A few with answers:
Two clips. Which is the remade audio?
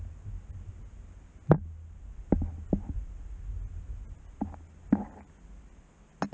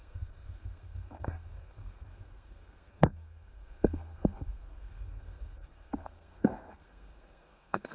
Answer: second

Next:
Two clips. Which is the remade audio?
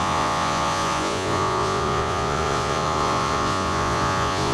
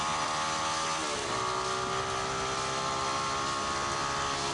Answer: first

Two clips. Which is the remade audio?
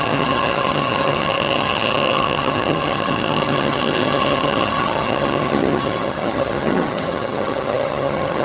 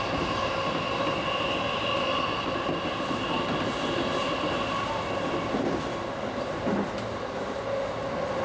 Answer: first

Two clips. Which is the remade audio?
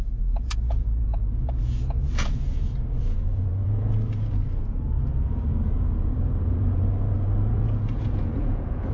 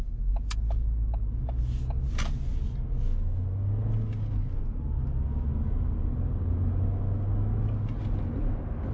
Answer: first